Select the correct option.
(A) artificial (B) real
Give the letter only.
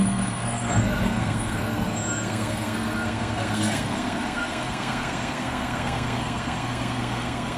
A